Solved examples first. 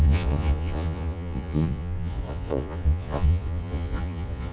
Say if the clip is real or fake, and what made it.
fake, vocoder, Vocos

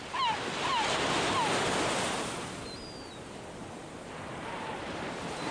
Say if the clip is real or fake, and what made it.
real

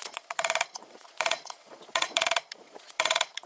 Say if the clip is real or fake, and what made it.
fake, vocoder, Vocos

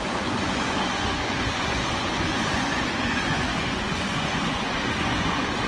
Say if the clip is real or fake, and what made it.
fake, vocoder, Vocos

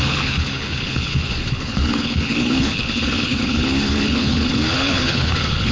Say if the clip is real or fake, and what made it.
fake, codec, HILCodec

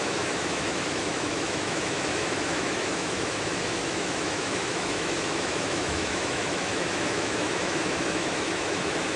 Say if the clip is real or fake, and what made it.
fake, autoencoder, DAC-VAE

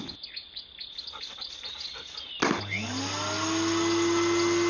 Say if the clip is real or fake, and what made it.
real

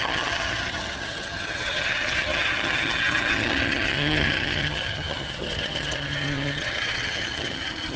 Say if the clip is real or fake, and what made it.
fake, vocoder, HiFi-GAN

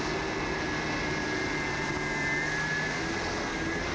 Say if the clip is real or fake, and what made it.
real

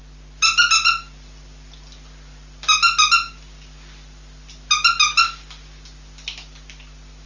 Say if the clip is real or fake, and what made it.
real